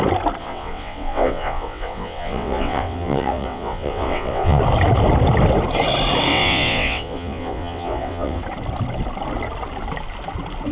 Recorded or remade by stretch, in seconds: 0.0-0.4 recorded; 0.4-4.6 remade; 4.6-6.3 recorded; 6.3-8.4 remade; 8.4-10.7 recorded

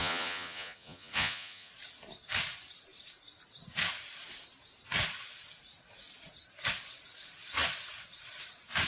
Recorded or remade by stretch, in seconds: 0.0-1.7 remade; 1.7-8.9 recorded

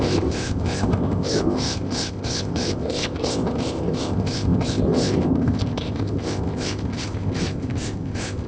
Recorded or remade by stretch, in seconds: 0.0-8.5 remade